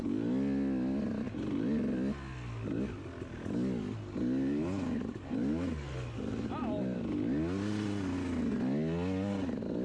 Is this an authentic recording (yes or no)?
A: yes